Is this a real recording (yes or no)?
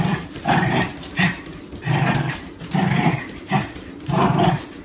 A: no